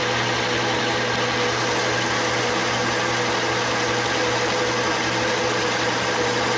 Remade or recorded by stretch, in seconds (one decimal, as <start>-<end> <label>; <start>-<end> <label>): 0.0-6.6 recorded